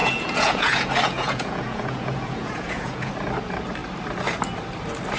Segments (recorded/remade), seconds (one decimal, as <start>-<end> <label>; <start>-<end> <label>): 0.0-3.1 remade; 3.1-5.2 recorded